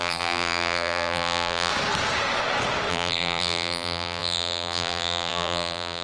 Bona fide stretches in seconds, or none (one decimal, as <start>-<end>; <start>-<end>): 1.7-2.9